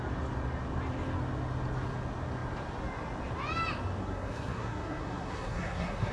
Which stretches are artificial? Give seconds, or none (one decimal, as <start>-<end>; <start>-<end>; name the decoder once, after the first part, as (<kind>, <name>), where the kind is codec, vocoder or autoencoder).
4.0-6.1 (codec, SNAC)